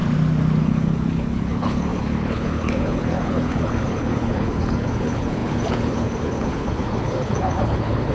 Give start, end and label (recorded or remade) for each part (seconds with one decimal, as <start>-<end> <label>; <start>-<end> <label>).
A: 0.0-0.6 recorded; 0.6-8.1 remade